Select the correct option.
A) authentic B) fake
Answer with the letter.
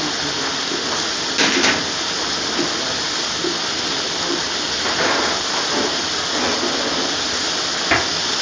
A